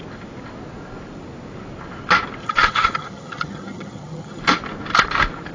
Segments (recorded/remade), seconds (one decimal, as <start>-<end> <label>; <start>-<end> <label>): 0.0-2.4 recorded; 2.4-4.4 remade; 4.4-5.5 recorded